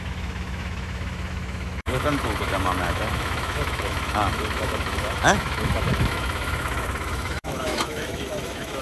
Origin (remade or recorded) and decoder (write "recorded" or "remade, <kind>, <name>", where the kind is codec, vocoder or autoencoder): remade, autoencoder, DAC-VAE